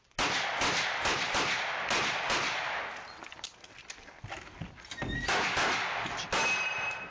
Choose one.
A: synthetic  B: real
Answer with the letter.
B